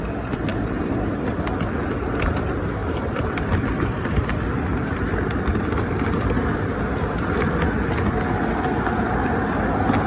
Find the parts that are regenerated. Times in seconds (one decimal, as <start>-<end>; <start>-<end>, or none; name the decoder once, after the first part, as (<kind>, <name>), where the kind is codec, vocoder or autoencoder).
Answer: 0.5-1.1 (vocoder, BigVGAN v2); 2.8-7.6